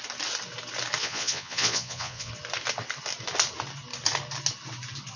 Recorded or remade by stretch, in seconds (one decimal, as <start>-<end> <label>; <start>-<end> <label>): 0.0-1.0 recorded; 1.0-2.3 remade; 2.3-5.2 recorded